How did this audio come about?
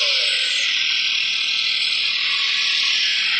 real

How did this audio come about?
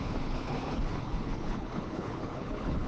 fake